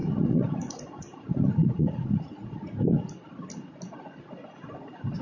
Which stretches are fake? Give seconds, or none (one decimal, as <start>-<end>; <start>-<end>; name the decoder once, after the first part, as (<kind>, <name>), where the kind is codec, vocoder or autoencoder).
0.0-2.6 (vocoder, Vocos)